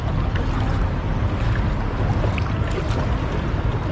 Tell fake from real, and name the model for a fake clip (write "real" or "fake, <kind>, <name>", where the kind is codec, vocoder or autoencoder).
real